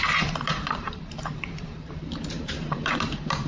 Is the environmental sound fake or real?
fake